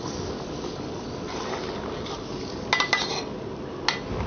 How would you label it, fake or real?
real